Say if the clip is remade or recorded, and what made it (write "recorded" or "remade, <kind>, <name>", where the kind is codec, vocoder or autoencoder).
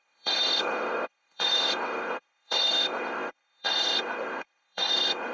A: remade, codec, ZipCodec